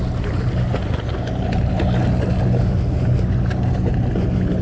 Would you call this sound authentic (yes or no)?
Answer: yes